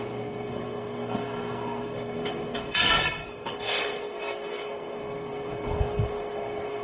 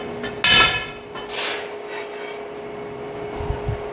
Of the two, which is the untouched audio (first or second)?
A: second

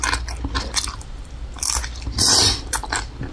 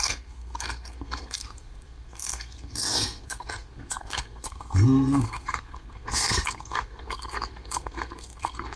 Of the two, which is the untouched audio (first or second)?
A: first